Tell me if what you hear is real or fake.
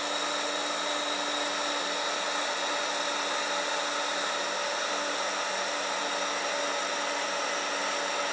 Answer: real